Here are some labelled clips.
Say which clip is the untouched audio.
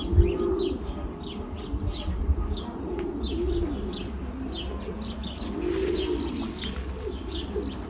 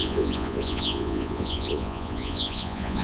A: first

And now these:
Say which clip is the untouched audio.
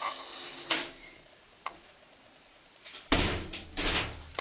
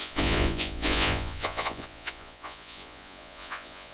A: first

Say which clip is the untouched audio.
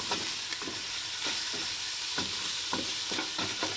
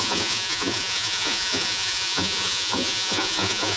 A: first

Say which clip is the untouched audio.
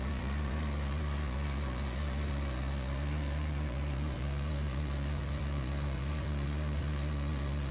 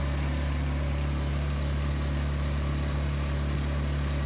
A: second